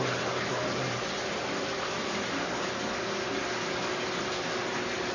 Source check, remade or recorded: recorded